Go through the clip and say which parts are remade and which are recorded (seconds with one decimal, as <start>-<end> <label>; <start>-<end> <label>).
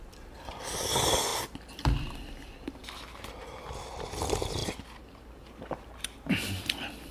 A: 0.0-1.3 remade; 1.3-1.8 recorded; 1.8-2.8 remade; 2.8-3.9 recorded; 3.9-4.6 remade; 4.6-5.5 recorded; 5.5-7.1 remade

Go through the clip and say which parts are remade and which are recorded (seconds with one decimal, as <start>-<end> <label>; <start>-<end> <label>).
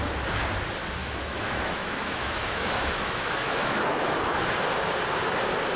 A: 0.0-1.0 recorded; 1.0-4.5 remade; 4.5-5.8 recorded